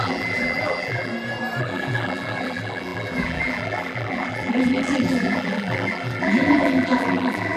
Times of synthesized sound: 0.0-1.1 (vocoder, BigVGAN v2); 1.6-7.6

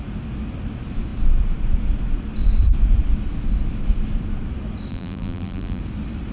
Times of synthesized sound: 4.9-5.8 (vocoder, BigVGAN v2)

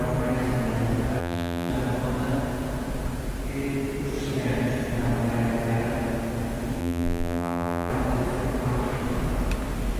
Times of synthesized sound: 1.2-1.7 (vocoder, BigVGAN v2); 6.8-7.9

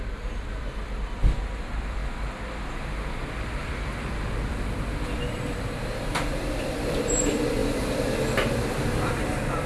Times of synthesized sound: 0.0-2.0 (vocoder, BigVGAN v2); 3.4-7.6; 8.5-9.7